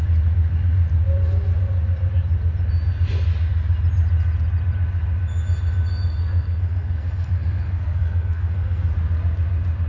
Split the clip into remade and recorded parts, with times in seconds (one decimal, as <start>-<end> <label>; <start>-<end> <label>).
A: 0.0-6.2 recorded; 6.2-8.9 remade; 8.9-9.9 recorded

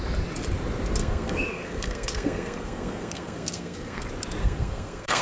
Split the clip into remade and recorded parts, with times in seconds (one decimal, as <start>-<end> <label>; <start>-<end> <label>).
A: 0.0-1.0 recorded; 1.0-4.0 remade; 4.0-4.4 recorded; 4.4-5.2 remade

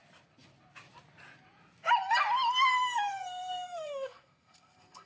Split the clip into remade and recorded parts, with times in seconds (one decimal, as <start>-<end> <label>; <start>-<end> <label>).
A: 0.0-3.1 recorded; 3.1-5.1 remade

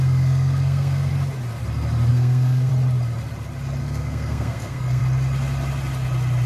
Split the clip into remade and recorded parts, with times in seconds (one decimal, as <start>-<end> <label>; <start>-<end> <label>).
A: 0.0-1.1 remade; 1.1-2.1 recorded; 2.1-2.7 remade; 2.7-3.8 recorded; 3.8-5.0 remade; 5.0-6.5 recorded

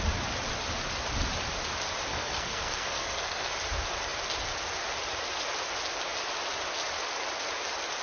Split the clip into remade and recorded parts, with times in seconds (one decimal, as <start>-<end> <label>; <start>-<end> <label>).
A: 0.0-2.1 recorded; 2.1-3.5 remade; 3.5-8.0 recorded

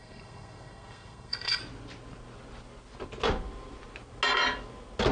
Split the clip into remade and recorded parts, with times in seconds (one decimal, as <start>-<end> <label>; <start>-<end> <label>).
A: 0.0-1.6 remade; 1.6-5.1 recorded

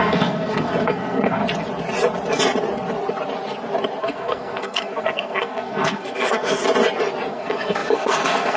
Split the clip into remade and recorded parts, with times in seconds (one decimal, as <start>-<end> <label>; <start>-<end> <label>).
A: 0.0-1.4 remade; 1.4-4.0 recorded; 4.0-6.6 remade; 6.6-7.3 recorded; 7.3-8.6 remade